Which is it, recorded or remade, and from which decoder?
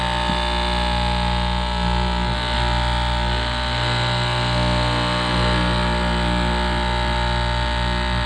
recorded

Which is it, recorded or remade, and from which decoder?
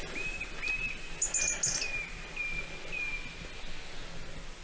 recorded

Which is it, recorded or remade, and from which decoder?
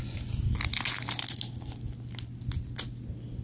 recorded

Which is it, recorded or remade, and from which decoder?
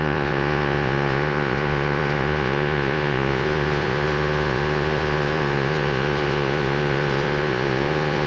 remade, vocoder, Vocos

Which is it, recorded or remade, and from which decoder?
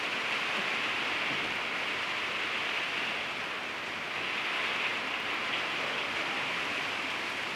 recorded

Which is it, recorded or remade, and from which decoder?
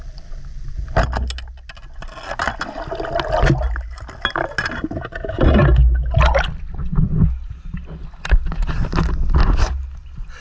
recorded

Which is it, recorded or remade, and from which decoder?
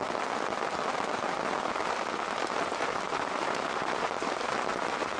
recorded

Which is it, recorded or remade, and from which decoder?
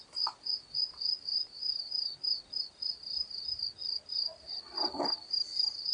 recorded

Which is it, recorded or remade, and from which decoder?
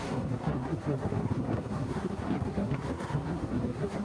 remade, codec, SNAC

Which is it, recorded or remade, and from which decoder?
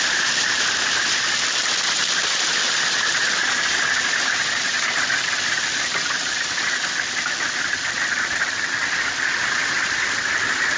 recorded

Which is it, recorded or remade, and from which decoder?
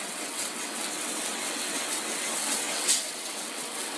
remade, vocoder, WaveNeXt